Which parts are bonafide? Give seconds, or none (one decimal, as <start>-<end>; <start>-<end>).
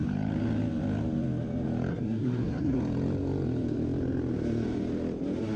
0.0-1.9; 2.8-5.6